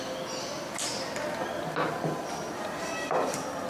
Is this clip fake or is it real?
real